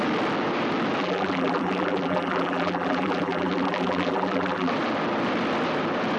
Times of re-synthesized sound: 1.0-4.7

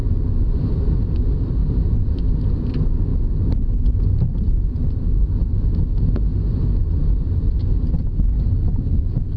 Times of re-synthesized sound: 1.6-2.2